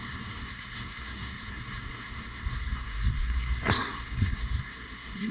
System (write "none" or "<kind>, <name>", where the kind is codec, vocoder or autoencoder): codec, SNAC